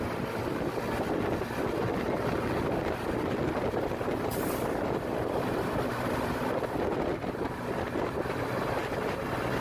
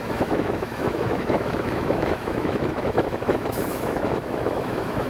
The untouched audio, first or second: first